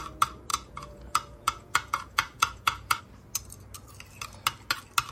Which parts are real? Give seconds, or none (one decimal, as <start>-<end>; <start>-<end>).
0.0-0.5; 3.0-5.1